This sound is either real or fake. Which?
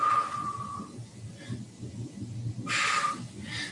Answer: real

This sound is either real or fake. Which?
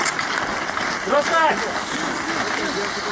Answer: real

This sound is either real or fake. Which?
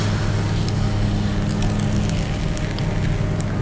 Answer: real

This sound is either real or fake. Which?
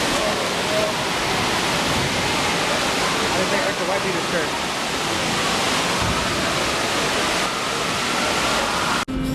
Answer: real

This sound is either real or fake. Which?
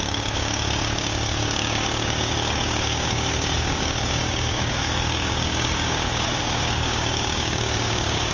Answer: fake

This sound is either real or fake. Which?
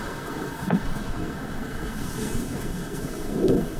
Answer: fake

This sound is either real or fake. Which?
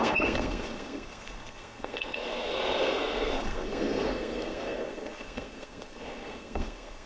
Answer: fake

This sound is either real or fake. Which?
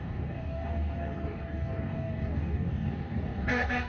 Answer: fake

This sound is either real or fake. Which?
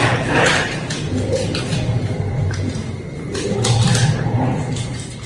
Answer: real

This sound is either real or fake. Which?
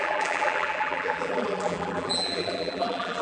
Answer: fake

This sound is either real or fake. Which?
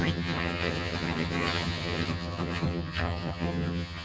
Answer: fake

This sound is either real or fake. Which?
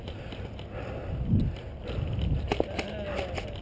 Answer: real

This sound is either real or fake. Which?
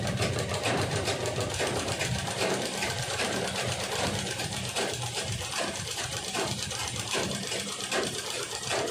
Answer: fake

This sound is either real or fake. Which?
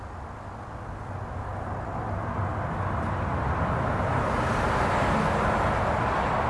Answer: real